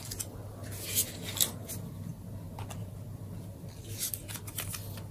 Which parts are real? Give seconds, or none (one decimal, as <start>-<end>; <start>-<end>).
0.0-5.1